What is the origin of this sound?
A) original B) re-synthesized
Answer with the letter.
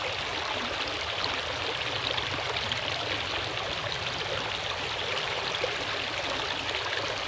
A